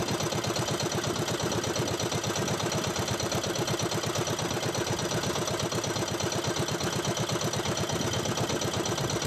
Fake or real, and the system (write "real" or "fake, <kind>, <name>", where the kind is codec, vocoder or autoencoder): real